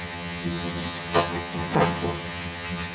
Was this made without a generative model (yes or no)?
no